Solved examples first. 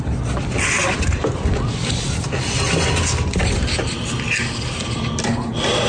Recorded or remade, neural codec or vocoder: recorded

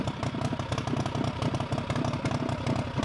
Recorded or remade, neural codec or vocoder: recorded